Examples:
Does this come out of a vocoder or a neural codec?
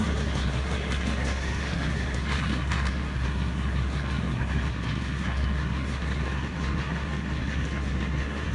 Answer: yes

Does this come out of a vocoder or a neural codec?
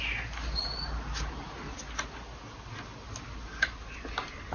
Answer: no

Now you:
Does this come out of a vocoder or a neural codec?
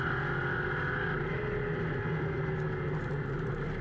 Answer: no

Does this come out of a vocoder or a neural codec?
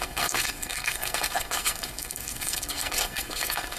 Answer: yes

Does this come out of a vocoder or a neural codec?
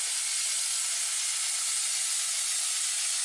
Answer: no